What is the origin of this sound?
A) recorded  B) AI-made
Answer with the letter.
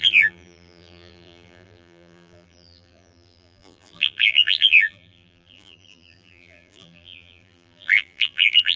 B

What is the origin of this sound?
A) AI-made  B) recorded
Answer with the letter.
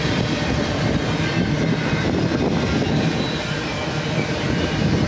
A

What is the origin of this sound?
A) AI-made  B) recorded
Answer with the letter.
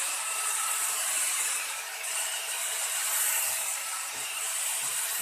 A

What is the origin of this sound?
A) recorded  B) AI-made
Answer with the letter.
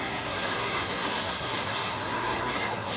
B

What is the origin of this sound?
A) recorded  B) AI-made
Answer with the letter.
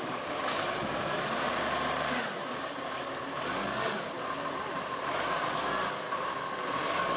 A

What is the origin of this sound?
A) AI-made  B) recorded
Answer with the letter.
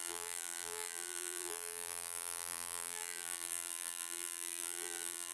A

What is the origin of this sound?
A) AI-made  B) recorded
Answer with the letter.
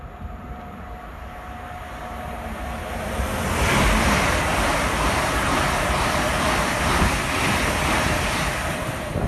A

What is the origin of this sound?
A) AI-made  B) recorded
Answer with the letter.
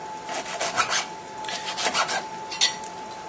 B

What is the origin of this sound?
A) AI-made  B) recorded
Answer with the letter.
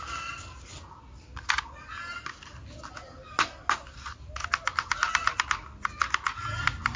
B